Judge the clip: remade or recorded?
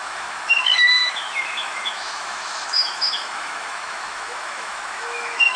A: remade